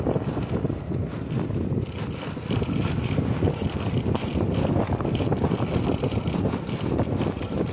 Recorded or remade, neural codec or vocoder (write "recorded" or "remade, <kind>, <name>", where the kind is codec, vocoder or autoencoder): recorded